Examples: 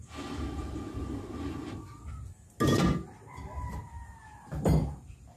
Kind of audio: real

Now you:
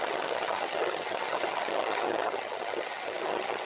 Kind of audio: fake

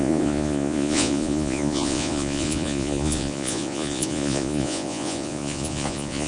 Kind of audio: fake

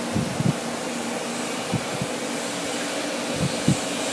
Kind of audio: real